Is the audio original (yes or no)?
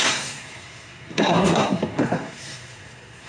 no